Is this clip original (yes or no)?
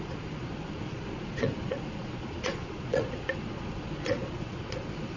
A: no